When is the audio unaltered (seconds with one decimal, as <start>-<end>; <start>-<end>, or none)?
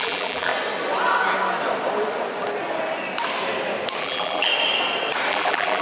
0.5-4.0; 4.5-5.3